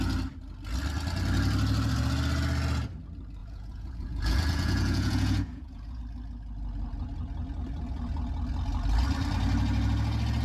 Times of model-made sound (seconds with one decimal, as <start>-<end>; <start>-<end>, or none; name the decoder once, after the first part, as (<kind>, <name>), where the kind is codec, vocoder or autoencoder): 3.4-6.0 (vocoder, Vocos)